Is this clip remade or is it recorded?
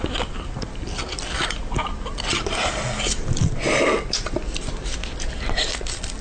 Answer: recorded